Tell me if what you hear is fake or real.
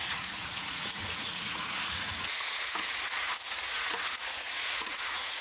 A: fake